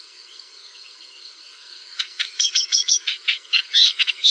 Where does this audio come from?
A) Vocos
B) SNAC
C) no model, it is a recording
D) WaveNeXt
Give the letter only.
B